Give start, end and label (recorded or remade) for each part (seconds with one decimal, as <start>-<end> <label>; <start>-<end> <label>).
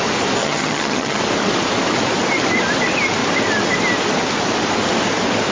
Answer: 0.0-0.4 recorded; 0.4-1.2 remade; 1.2-5.5 recorded